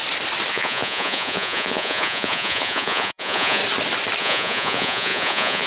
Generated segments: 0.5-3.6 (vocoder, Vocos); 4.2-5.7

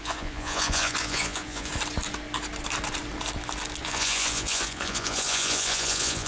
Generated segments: 0.0-1.7 (vocoder, Vocos); 3.8-6.3